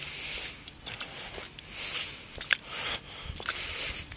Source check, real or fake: real